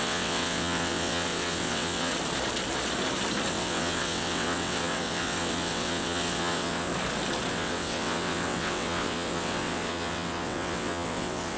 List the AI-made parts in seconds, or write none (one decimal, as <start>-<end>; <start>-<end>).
0.0-2.1; 3.5-6.9; 7.5-11.6